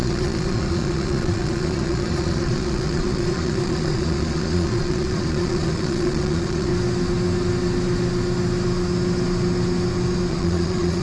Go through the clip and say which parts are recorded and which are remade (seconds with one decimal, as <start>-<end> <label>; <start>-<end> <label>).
0.0-6.7 remade; 6.7-10.3 recorded; 10.3-11.0 remade